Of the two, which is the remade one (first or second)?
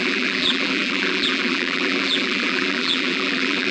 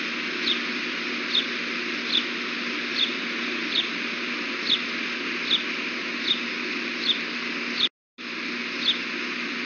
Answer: first